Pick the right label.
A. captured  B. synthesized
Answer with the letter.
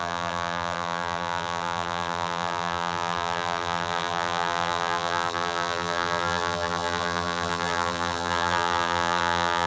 B